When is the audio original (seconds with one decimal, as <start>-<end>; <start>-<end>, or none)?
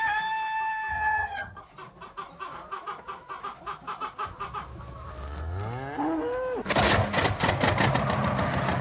0.0-0.9; 1.6-8.8